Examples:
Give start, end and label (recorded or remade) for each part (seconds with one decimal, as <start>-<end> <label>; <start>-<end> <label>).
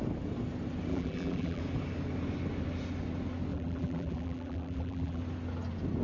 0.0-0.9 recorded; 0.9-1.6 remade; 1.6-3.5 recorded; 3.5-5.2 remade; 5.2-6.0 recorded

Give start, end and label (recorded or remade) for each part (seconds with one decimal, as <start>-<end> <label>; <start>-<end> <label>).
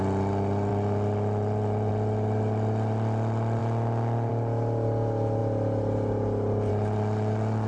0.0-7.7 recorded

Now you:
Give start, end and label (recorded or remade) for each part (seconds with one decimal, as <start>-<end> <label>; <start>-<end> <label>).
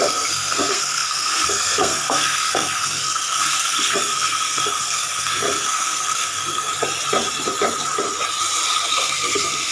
0.0-6.7 remade; 6.7-8.9 recorded; 8.9-9.7 remade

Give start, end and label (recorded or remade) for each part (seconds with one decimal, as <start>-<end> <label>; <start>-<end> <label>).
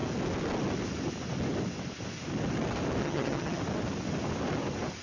0.0-3.0 recorded; 3.0-3.6 remade; 3.6-5.0 recorded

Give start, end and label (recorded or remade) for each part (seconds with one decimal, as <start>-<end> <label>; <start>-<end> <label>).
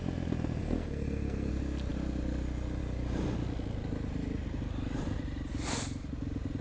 0.0-0.6 recorded; 0.6-1.5 remade; 1.5-6.6 recorded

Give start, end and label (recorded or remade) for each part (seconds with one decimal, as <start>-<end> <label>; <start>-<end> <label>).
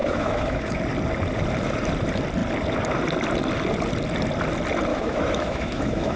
0.0-0.8 remade; 0.8-4.9 recorded; 4.9-6.2 remade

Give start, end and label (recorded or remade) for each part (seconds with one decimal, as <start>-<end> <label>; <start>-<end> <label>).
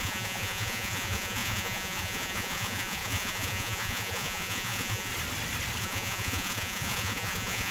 0.0-5.1 remade; 5.1-5.8 recorded; 5.8-7.7 remade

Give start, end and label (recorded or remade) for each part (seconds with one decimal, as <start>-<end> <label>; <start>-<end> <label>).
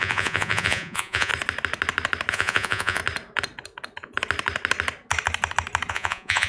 0.0-1.3 remade; 1.3-2.3 recorded; 2.3-3.0 remade; 3.0-5.9 recorded; 5.9-6.5 remade